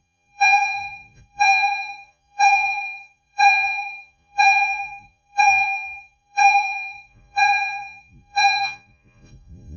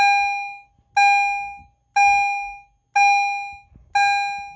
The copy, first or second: first